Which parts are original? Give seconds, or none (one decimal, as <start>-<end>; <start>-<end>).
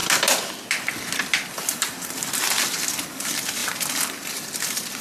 0.0-5.0